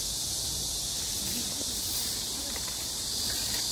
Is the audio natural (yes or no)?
yes